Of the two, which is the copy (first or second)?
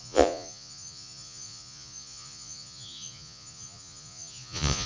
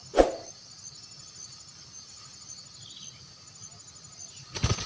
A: first